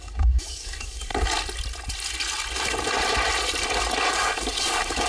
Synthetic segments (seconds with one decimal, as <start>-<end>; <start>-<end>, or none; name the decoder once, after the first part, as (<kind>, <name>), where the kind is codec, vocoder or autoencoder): 0.0-1.1 (codec, DAC); 4.1-5.1